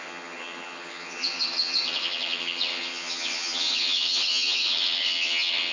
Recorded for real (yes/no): no